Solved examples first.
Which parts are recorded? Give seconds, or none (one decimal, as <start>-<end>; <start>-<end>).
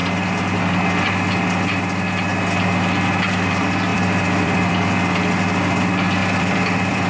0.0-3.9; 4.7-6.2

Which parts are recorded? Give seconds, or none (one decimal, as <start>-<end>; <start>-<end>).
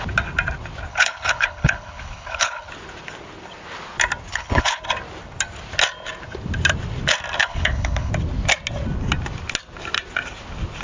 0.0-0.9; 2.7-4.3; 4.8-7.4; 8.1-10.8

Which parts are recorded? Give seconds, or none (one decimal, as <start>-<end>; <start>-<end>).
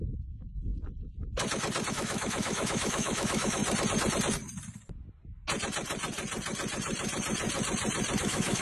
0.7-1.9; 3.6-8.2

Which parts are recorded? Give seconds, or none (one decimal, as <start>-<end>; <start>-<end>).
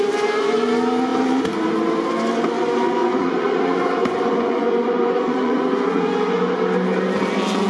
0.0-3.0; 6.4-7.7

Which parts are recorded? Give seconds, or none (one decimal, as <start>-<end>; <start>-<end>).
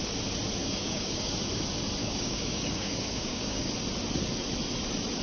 0.0-0.6; 1.3-2.0; 3.6-5.2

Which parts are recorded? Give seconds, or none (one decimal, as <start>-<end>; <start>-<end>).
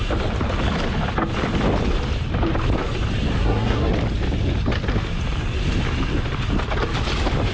0.0-3.4; 3.9-7.5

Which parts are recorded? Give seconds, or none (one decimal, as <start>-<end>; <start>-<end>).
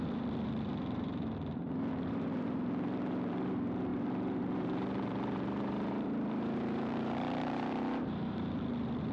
none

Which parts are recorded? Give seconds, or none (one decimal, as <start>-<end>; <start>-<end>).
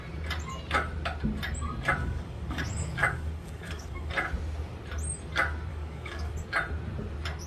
0.0-2.0; 2.6-3.0; 4.1-5.7; 6.3-7.5